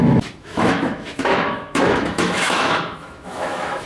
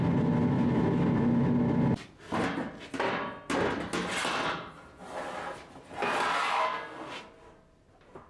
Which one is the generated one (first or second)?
first